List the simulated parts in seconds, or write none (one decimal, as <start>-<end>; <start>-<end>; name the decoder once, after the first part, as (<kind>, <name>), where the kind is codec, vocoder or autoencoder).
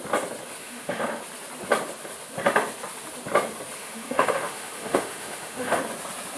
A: 0.6-1.2 (autoencoder, DAC-VAE); 3.8-5.8